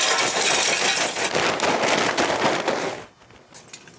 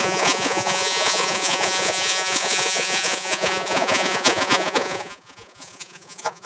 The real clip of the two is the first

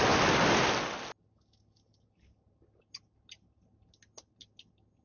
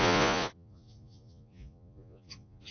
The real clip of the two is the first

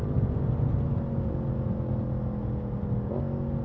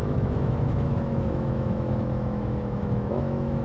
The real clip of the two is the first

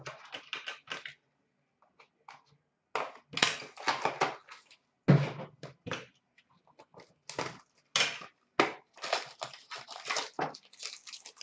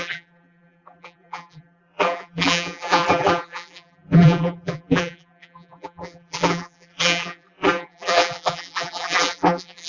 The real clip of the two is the first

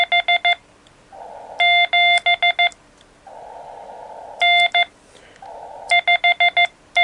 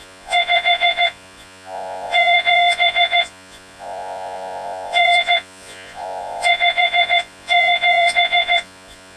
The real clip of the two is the first